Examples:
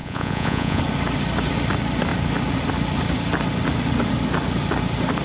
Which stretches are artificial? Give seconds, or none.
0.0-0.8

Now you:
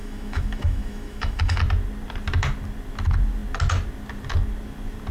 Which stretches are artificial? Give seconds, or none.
0.0-1.6

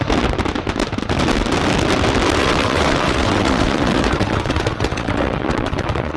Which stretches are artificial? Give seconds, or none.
2.4-6.2

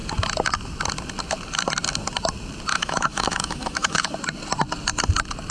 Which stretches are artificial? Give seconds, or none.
2.7-4.1

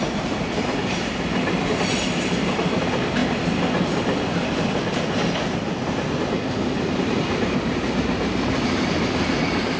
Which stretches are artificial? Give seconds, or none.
0.0-9.8